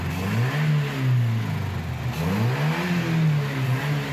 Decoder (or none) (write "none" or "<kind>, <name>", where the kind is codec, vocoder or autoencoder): none